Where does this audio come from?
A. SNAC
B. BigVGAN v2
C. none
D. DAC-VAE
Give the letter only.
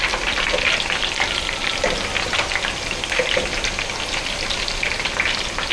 C